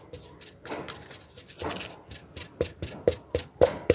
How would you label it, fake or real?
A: real